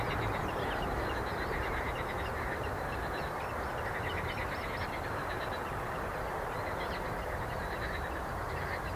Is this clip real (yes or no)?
yes